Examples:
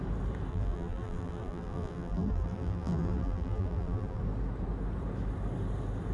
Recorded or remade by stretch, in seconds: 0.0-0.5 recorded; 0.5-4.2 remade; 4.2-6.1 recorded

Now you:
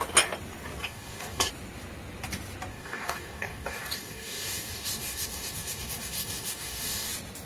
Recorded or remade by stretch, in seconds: 0.0-0.8 recorded; 0.8-1.5 remade; 1.5-2.7 recorded; 2.7-7.1 remade; 7.1-7.5 recorded

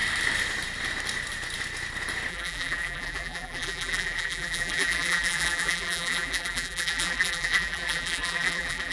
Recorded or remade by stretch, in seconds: 0.0-2.3 recorded; 2.3-8.9 remade

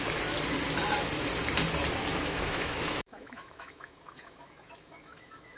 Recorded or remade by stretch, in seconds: 0.0-2.1 recorded; 2.1-5.6 remade